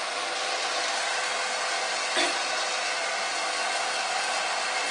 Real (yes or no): yes